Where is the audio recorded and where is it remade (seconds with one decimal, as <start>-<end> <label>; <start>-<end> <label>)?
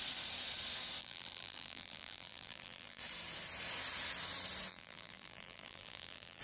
0.0-1.0 recorded; 1.0-3.0 remade; 3.0-4.7 recorded; 4.7-6.4 remade